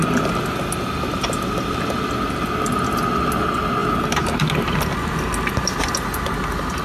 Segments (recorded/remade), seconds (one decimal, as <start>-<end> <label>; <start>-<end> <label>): 0.0-6.8 recorded